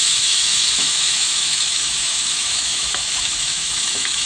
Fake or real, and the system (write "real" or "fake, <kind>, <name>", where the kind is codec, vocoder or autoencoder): fake, autoencoder, DAC-VAE